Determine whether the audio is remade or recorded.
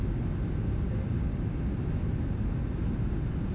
recorded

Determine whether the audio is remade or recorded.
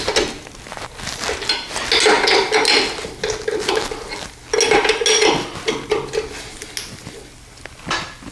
recorded